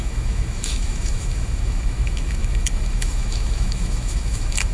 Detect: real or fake fake